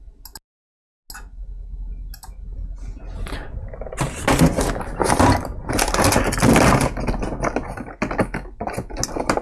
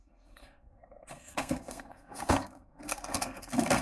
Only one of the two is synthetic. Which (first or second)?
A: second